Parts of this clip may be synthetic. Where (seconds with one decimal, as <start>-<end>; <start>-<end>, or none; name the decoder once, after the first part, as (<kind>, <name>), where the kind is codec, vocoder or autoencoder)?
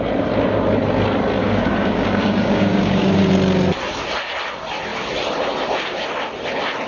1.4-3.2 (codec, DAC)